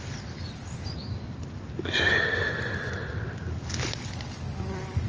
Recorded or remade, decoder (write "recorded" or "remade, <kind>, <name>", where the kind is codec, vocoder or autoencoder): recorded